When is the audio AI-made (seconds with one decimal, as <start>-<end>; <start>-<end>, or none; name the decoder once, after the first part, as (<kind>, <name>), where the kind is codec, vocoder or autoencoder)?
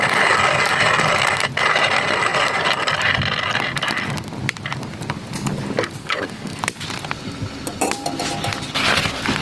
6.0-6.6 (codec, SNAC)